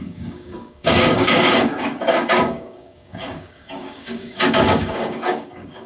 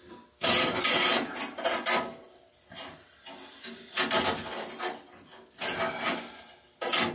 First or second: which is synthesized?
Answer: first